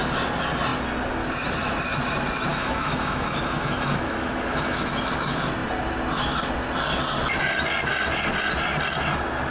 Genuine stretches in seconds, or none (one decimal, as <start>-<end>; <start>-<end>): 0.0-2.5; 4.9-9.5